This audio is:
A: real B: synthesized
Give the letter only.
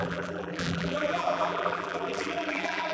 B